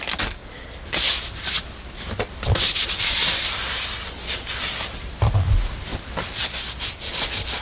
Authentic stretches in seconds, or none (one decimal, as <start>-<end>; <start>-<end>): 0.0-7.6